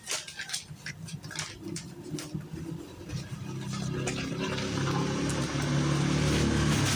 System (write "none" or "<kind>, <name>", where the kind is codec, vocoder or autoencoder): none